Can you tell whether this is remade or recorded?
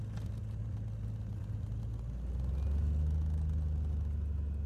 recorded